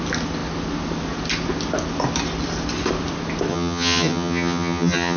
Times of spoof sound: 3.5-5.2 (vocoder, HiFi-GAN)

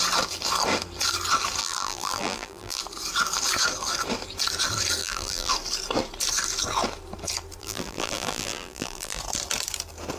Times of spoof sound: 1.6-2.8 (vocoder, BigVGAN v2); 5.0-5.5; 7.6-9.2

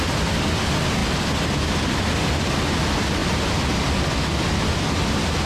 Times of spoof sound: none

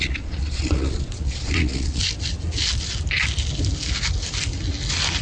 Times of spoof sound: 0.0-2.0 (vocoder, Vocos)